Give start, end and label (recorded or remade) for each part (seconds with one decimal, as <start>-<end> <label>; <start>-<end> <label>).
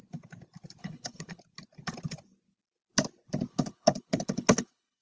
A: 0.0-0.8 recorded; 0.8-1.4 remade; 1.4-3.5 recorded; 3.5-5.0 remade